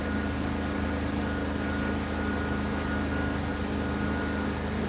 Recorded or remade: recorded